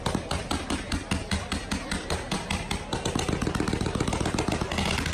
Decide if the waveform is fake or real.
real